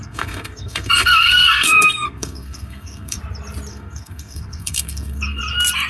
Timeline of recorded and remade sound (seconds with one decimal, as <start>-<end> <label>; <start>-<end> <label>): 0.0-3.2 remade; 3.2-3.7 recorded; 3.7-5.4 remade; 5.4-5.9 recorded

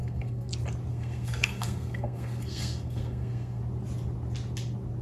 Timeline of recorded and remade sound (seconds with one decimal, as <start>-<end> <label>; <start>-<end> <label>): 0.0-0.5 remade; 0.5-0.9 recorded; 0.9-3.6 remade; 3.6-5.0 recorded

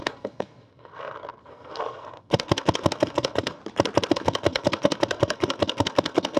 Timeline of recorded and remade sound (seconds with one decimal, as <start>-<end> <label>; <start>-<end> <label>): 0.0-3.6 remade; 3.6-4.1 recorded; 4.1-6.4 remade

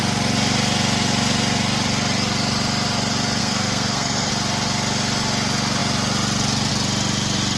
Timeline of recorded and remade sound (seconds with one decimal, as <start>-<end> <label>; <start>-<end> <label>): 0.0-3.4 recorded; 3.4-4.3 remade; 4.3-7.6 recorded

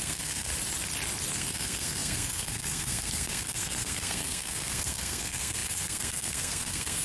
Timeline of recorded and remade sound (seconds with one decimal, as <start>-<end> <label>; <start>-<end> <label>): 0.0-0.5 remade; 0.5-1.3 recorded; 1.3-7.0 remade

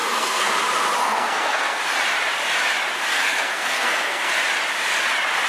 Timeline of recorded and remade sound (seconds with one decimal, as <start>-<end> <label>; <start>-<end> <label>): 0.0-0.5 remade; 0.5-1.0 recorded; 1.0-1.8 remade; 1.8-3.1 recorded; 3.1-4.3 remade; 4.3-5.5 recorded

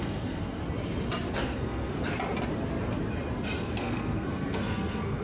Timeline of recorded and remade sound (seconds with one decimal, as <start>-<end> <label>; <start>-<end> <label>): 0.0-0.6 remade; 0.6-1.4 recorded; 1.4-1.9 remade; 1.9-3.6 recorded; 3.6-5.2 remade